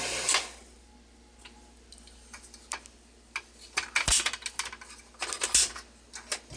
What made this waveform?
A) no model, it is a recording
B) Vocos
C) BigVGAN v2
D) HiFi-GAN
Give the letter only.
A